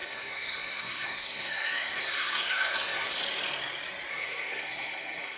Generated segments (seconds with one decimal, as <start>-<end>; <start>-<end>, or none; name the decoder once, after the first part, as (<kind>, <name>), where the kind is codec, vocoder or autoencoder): 0.0-3.2 (codec, SNAC); 4.1-5.4